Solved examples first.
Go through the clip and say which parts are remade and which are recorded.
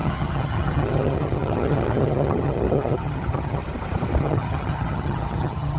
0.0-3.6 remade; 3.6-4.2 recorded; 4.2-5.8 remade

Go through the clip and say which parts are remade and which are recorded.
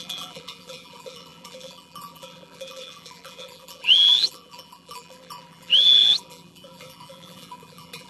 0.0-8.1 remade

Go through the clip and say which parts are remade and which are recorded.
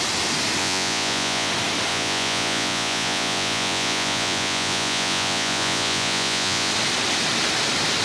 0.0-0.6 recorded; 0.6-1.5 remade; 1.5-1.9 recorded; 1.9-6.7 remade; 6.7-8.0 recorded